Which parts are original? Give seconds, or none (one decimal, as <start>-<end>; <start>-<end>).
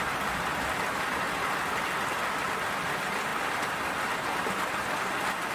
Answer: 0.0-5.5